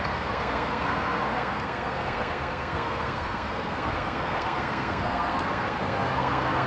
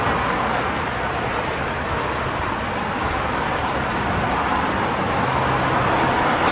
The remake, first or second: first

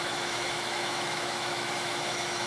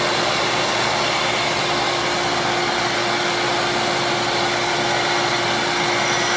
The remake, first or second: first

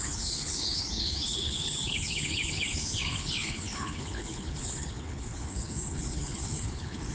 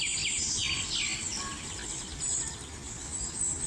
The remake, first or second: first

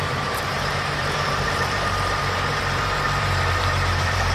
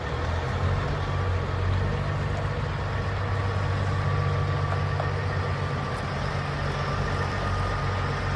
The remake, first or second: first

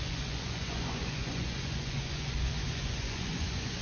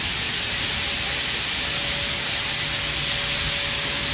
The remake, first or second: first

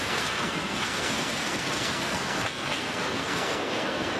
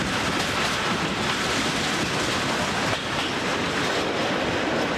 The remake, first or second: first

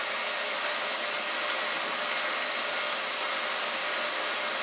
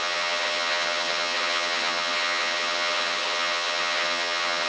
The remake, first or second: second